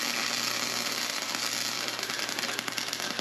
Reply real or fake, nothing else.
real